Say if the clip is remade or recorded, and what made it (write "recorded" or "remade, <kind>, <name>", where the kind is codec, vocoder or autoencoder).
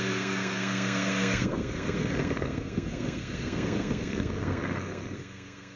remade, codec, SNAC